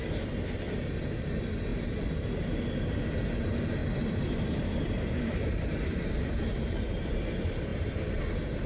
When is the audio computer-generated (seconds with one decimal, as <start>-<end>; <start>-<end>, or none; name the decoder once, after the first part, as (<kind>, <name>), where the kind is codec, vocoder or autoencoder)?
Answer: 1.7-2.4 (vocoder, BigVGAN v2); 3.8-6.8; 7.7-8.2